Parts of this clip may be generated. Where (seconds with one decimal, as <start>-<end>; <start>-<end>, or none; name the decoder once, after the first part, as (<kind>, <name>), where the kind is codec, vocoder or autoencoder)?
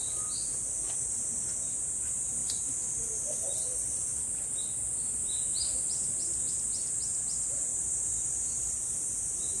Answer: 7.7-8.8 (vocoder, BigVGAN v2)